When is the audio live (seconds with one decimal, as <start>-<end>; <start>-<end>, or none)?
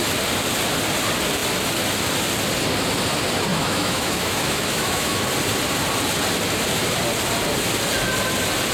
0.0-3.5; 5.2-8.7